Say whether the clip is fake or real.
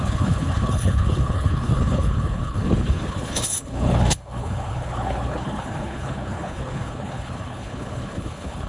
fake